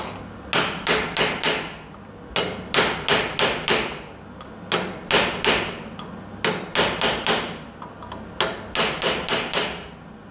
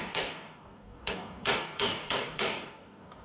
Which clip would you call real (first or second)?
first